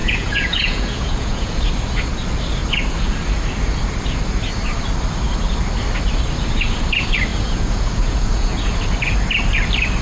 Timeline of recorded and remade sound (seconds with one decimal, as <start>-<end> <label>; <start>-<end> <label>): 0.0-1.6 remade; 1.6-7.3 recorded; 7.3-8.8 remade; 8.8-10.0 recorded